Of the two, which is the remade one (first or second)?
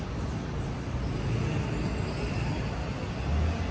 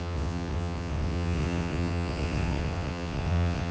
second